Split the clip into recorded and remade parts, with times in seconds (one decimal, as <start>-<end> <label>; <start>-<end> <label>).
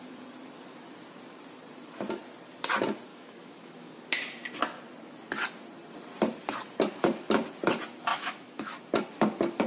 0.0-3.1 recorded; 3.1-3.9 remade; 3.9-8.1 recorded; 8.1-8.7 remade; 8.7-9.7 recorded